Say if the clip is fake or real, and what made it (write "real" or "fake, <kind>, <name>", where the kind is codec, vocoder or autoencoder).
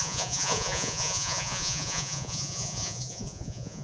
fake, vocoder, Vocos